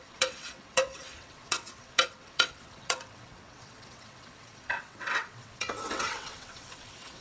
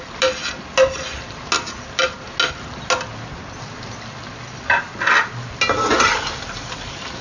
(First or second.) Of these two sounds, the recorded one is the second